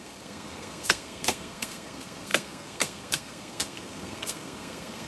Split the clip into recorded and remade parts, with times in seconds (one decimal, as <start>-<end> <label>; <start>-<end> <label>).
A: 0.0-5.1 remade